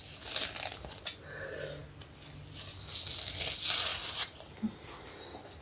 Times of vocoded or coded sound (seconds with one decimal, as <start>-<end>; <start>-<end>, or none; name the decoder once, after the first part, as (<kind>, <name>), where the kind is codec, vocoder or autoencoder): 3.9-5.0 (vocoder, BigVGAN v2)